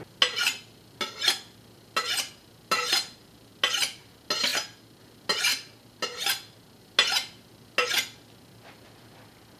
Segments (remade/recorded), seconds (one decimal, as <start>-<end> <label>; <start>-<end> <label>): 0.0-9.6 recorded